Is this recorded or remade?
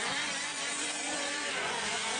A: remade